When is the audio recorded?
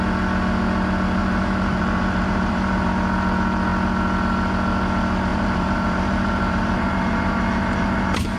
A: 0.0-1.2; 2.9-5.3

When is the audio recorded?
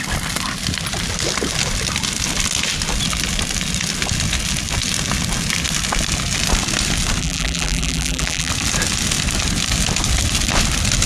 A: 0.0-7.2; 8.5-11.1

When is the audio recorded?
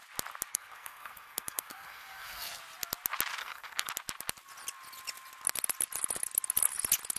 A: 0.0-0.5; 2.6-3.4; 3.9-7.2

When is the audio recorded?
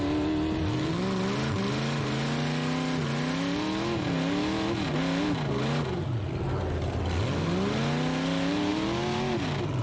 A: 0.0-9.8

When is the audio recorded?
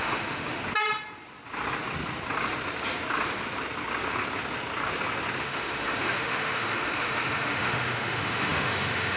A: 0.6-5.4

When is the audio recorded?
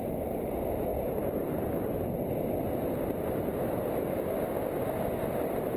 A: 0.0-5.8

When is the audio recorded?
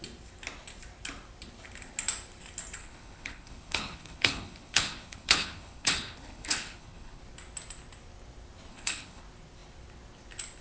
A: 0.0-2.8; 7.2-8.7; 9.2-10.6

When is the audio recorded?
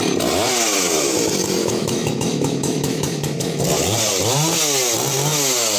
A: 0.0-1.6; 3.6-5.8